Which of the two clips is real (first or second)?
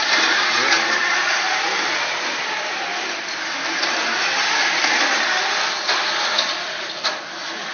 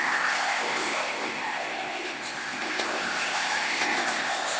first